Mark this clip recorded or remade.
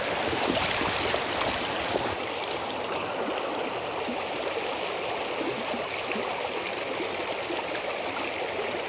recorded